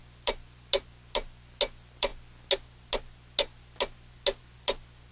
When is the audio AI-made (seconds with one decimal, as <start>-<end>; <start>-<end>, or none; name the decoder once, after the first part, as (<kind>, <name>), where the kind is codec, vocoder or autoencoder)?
none